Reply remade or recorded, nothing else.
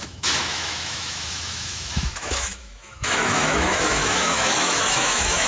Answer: remade